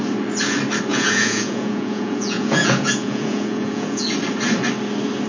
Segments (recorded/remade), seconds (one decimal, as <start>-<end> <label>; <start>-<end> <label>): 0.0-0.9 recorded; 0.9-4.1 remade; 4.1-5.3 recorded